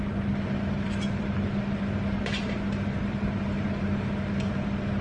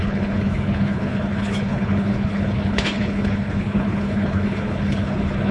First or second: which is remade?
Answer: second